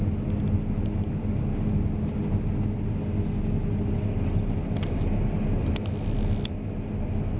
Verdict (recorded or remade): recorded